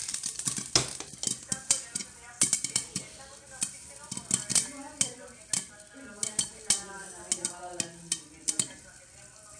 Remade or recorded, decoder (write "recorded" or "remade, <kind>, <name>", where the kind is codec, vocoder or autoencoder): recorded